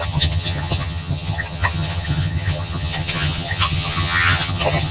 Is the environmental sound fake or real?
fake